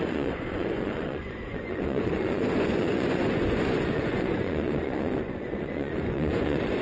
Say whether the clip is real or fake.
fake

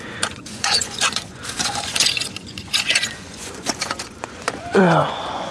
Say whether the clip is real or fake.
fake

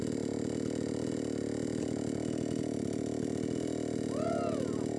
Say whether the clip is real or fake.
real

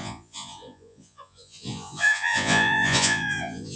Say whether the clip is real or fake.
fake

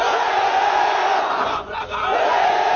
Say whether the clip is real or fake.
fake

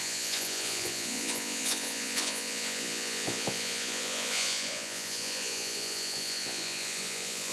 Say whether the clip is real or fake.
fake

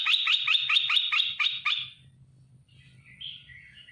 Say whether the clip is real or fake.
real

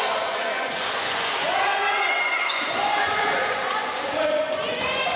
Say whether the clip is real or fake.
fake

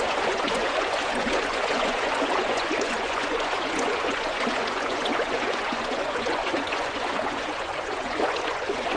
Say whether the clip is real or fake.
fake